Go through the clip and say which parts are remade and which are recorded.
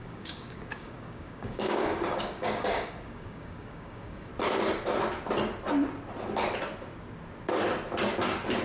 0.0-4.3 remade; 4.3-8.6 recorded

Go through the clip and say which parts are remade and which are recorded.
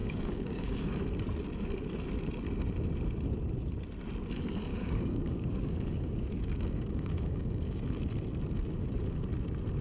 0.0-0.9 remade; 0.9-4.7 recorded; 4.7-8.0 remade; 8.0-9.8 recorded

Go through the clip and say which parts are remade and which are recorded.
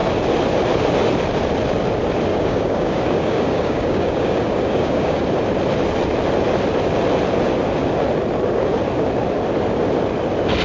0.0-2.3 recorded; 2.3-5.2 remade; 5.2-10.6 recorded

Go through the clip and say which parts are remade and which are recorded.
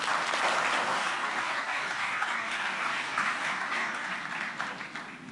0.0-0.9 recorded; 0.9-4.1 remade; 4.1-5.3 recorded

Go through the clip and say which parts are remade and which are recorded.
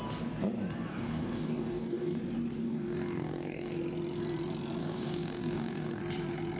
0.0-0.9 recorded; 0.9-2.2 remade; 2.2-2.6 recorded; 2.6-3.7 remade; 3.7-4.8 recorded; 4.8-6.0 remade; 6.0-6.6 recorded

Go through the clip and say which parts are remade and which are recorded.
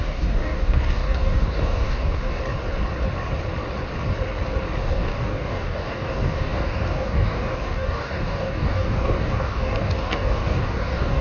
0.0-2.4 remade; 2.4-4.8 recorded; 4.8-11.2 remade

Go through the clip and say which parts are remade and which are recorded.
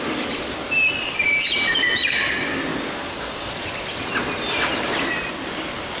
0.0-2.7 recorded; 2.7-3.5 remade; 3.5-6.0 recorded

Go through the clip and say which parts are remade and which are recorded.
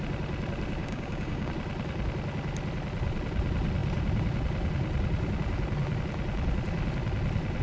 0.0-0.8 recorded; 0.8-1.5 remade; 1.5-7.6 recorded